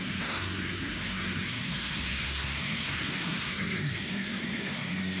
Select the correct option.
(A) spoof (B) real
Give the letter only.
A